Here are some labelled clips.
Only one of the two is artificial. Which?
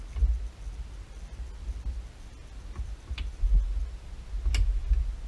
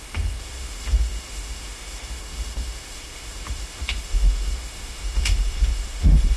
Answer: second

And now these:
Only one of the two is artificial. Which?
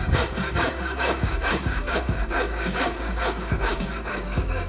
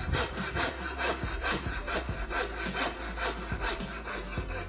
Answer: first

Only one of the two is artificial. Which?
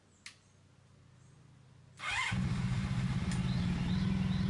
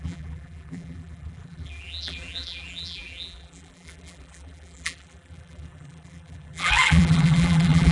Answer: second